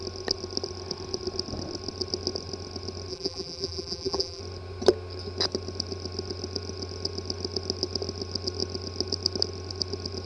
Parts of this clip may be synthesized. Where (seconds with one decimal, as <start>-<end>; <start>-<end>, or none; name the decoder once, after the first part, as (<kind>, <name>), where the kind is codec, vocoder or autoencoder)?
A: 3.1-4.4 (vocoder, BigVGAN v2)